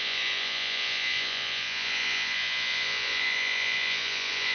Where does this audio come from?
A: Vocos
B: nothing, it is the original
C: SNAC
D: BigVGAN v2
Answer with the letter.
A